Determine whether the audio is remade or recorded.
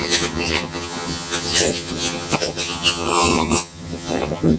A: remade